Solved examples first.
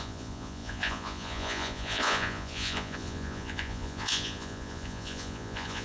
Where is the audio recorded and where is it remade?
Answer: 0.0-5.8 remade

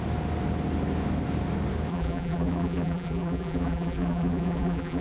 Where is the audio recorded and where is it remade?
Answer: 0.0-1.9 recorded; 1.9-5.0 remade

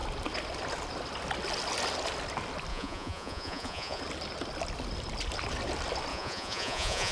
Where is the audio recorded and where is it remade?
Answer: 0.0-2.7 recorded; 2.7-4.0 remade; 4.0-6.1 recorded; 6.1-7.1 remade

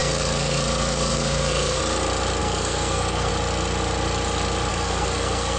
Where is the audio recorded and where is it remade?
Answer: 0.0-1.8 remade; 1.8-2.4 recorded; 2.4-3.3 remade; 3.3-4.7 recorded; 4.7-5.6 remade

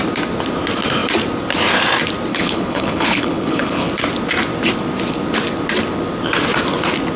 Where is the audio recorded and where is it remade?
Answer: 0.0-2.3 recorded; 2.3-3.9 remade; 3.9-7.2 recorded